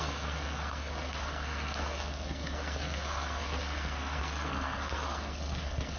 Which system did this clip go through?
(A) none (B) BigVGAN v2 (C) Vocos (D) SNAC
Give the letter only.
D